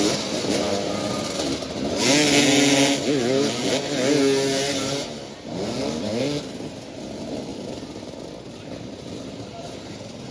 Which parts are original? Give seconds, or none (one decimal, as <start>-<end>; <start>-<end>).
0.0-7.5; 8.6-10.3